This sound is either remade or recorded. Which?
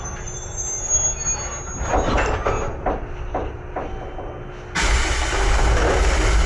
recorded